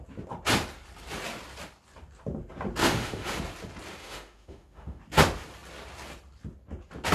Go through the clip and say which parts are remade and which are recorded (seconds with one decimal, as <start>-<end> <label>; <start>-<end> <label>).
0.0-2.8 recorded; 2.8-3.4 remade; 3.4-4.0 recorded; 4.0-5.0 remade; 5.0-7.1 recorded